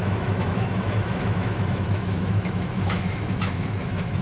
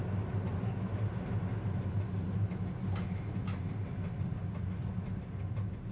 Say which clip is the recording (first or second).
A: second